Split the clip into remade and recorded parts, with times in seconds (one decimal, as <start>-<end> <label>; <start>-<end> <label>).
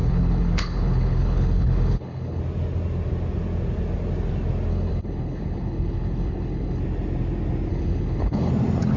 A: 0.0-2.4 remade; 2.4-4.7 recorded; 4.7-6.8 remade; 6.8-7.7 recorded; 7.7-8.5 remade; 8.5-9.0 recorded